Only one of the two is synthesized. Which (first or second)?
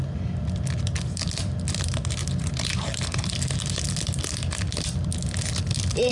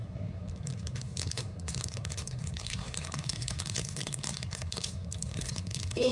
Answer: second